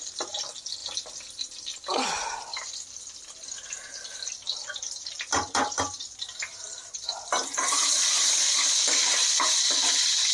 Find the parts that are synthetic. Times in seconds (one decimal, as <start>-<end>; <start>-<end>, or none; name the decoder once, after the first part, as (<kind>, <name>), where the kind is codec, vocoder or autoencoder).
2.5-3.1 (vocoder, BigVGAN v2); 4.4-7.3